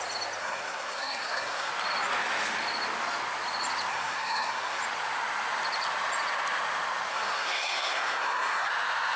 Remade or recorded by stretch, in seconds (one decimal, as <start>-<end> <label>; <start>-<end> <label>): 0.0-0.4 recorded; 0.4-1.7 remade; 1.7-3.9 recorded; 3.9-4.8 remade; 4.8-7.1 recorded; 7.1-8.7 remade; 8.7-9.2 recorded